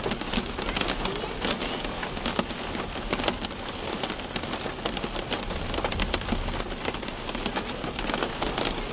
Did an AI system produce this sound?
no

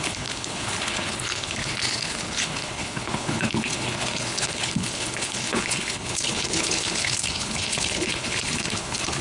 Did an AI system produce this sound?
yes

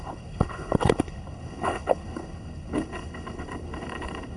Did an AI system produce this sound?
yes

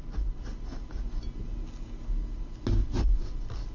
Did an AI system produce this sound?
no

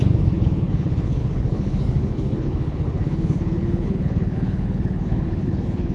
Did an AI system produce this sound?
yes